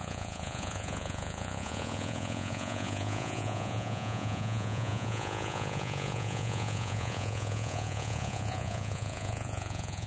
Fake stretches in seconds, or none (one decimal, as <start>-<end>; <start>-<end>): 0.0-10.1

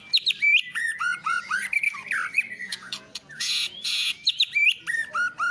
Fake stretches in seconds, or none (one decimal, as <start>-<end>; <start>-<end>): 0.7-1.6; 2.7-4.3